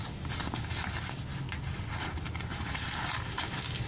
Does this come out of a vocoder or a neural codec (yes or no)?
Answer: no